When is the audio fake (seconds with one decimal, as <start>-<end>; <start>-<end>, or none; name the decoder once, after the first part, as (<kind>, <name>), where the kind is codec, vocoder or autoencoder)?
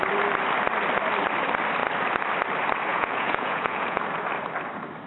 2.9-4.0 (vocoder, Vocos)